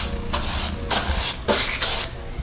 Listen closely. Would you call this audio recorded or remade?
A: recorded